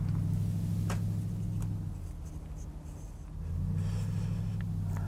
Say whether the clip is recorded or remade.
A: recorded